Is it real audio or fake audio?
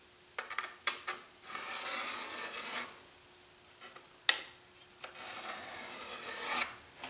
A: real